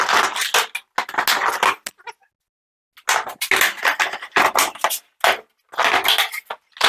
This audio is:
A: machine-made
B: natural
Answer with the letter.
B